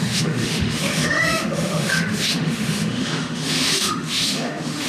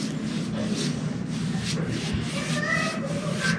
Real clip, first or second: second